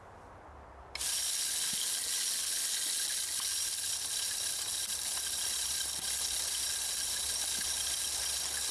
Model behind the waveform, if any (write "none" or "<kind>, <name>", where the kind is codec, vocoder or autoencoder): none